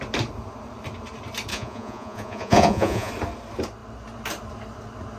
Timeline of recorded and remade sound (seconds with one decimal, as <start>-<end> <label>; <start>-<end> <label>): 0.0-1.5 recorded; 1.5-3.1 remade; 3.1-5.2 recorded